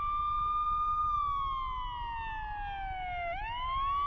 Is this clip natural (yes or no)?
yes